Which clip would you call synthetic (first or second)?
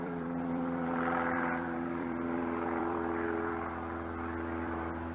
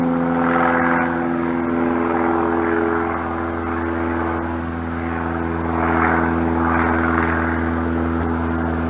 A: first